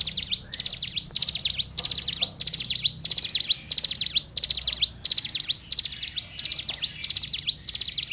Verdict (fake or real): real